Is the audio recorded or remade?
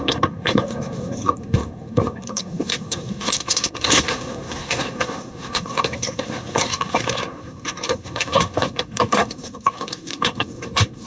remade